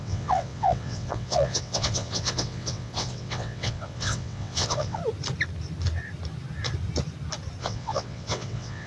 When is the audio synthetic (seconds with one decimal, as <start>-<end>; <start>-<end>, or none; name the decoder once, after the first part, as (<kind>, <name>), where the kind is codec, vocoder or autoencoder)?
0.0-5.0 (vocoder, WaveNeXt); 7.6-8.9